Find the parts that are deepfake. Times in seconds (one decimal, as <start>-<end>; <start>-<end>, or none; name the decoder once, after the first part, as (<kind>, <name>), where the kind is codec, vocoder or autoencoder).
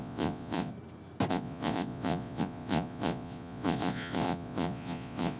0.0-0.7 (vocoder, Vocos); 1.3-5.4